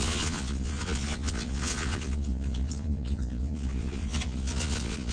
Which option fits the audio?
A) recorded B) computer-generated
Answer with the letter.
B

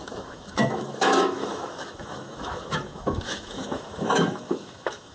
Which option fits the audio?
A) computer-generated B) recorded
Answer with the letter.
A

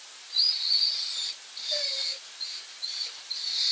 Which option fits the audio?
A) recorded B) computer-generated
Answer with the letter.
A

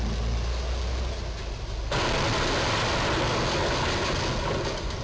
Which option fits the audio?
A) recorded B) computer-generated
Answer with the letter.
A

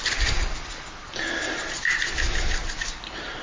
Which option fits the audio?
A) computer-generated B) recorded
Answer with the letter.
B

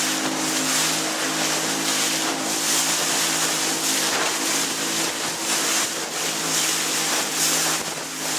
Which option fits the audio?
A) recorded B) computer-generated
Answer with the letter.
A